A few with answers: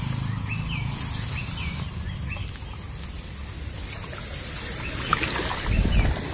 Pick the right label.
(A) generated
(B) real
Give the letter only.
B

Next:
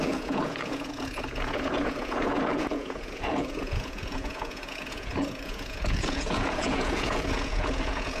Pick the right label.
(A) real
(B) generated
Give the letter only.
B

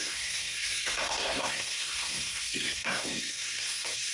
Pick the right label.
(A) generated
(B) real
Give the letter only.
A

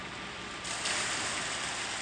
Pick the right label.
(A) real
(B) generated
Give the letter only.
A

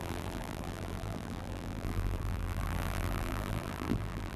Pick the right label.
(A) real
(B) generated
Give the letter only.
B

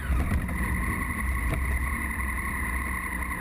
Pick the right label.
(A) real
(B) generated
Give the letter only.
A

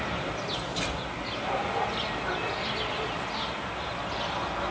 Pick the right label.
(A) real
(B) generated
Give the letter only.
A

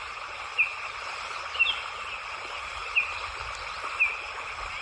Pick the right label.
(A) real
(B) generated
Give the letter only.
A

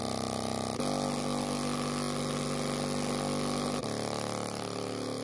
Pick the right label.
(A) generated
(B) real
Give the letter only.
B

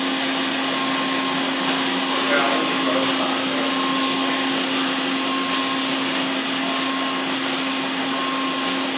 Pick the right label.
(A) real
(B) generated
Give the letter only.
A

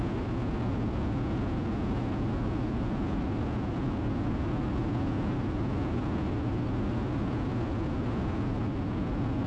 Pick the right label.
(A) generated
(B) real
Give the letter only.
B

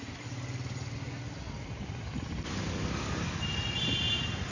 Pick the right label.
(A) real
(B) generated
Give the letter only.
A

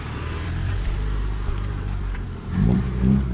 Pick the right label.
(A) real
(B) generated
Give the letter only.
B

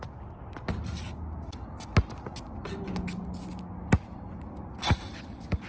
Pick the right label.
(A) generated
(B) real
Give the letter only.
B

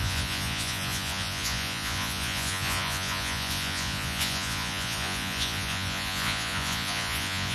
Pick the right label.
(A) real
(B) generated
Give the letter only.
B